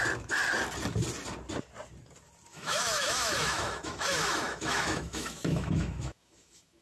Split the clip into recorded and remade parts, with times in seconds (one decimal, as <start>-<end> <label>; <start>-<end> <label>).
0.0-2.5 recorded; 2.5-6.8 remade